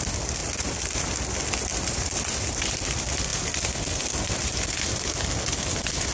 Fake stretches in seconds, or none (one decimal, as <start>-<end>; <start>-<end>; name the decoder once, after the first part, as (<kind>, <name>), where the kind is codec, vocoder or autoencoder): 0.4-1.1 (vocoder, BigVGAN v2); 1.7-2.8